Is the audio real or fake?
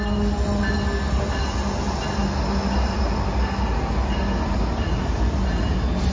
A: real